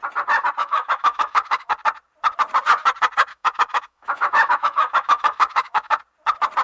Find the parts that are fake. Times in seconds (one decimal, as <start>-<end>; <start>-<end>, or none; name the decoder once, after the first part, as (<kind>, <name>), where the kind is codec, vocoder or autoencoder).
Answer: 0.6-1.7 (autoencoder, DAC-VAE); 3.3-6.0